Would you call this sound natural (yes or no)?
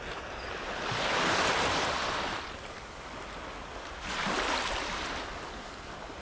yes